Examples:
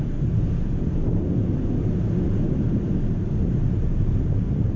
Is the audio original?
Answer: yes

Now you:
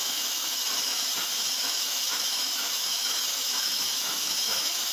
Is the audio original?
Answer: no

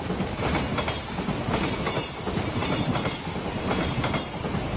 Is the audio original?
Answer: yes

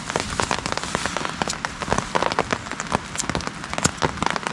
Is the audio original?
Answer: yes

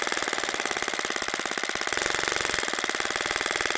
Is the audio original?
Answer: yes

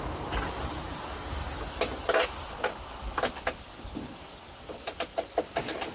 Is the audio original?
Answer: yes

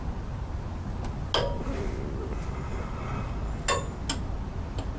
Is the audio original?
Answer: yes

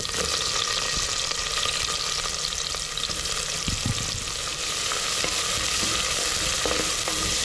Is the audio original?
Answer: yes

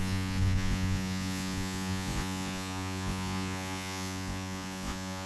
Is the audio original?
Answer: no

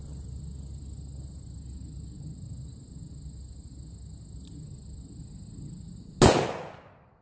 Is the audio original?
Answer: yes